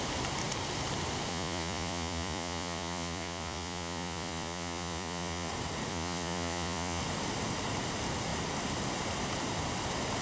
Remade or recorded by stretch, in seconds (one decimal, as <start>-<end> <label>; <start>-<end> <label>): 0.0-1.3 recorded; 1.3-5.5 remade; 5.5-5.9 recorded; 5.9-7.0 remade; 7.0-10.2 recorded